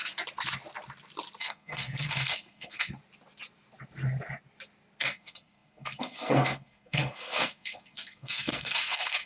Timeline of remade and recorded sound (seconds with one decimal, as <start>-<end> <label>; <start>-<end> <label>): 0.0-1.4 recorded; 1.4-3.0 remade; 3.0-5.0 recorded; 5.0-9.3 remade